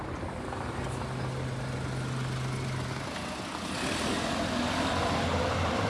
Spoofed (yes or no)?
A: no